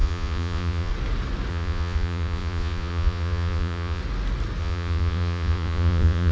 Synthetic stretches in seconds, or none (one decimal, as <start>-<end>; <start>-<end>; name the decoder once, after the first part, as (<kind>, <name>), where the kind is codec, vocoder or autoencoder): 0.0-0.9 (vocoder, Vocos); 1.5-4.0; 4.6-6.3